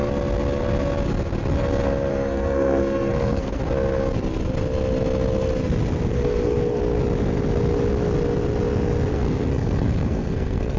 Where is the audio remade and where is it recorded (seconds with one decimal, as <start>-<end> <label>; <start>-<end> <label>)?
0.0-2.1 recorded; 2.1-3.6 remade; 3.6-6.1 recorded; 6.1-6.8 remade; 6.8-9.1 recorded; 9.1-10.8 remade